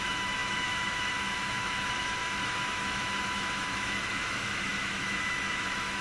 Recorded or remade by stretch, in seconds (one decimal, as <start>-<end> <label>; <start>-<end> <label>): 0.0-6.0 remade

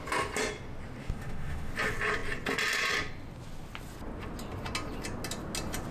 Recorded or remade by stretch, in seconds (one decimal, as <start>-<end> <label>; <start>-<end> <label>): 0.0-1.0 recorded; 1.0-1.7 remade; 1.7-5.9 recorded